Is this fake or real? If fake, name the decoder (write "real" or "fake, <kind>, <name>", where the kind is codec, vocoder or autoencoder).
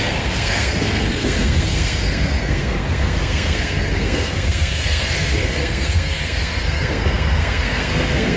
fake, codec, SNAC